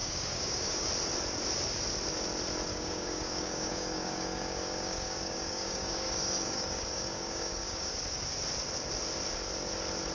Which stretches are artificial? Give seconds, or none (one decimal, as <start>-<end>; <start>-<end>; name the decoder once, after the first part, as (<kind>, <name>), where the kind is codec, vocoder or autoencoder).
0.0-0.9 (codec, DAC); 2.7-7.9